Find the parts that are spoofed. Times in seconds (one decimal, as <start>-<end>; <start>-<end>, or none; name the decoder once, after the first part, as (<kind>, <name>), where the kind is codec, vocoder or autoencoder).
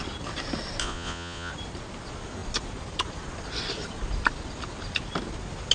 0.8-1.5 (vocoder, Vocos)